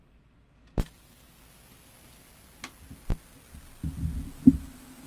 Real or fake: real